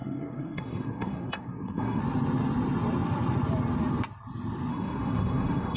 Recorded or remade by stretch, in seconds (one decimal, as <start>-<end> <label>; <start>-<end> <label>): 0.0-2.0 remade; 2.0-4.7 recorded; 4.7-5.8 remade